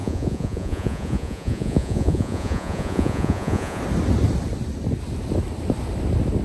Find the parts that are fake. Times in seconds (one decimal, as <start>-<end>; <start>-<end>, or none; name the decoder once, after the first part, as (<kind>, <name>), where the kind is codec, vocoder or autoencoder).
0.0-3.8 (vocoder, Vocos)